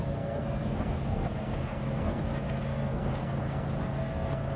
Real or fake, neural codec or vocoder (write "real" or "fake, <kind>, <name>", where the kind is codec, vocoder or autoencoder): fake, codec, SNAC